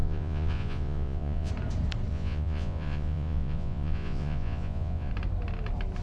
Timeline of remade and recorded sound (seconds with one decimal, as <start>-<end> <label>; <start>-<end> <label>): 0.0-1.5 remade; 1.5-2.1 recorded; 2.1-5.1 remade; 5.1-6.0 recorded